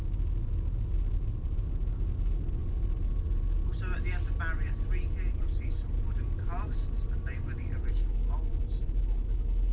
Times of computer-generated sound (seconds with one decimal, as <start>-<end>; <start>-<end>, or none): none